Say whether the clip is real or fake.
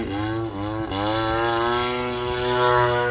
real